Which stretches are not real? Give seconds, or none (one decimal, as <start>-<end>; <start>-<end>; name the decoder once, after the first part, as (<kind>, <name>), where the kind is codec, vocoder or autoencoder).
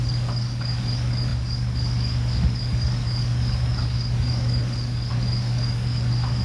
0.0-6.4 (codec, DAC)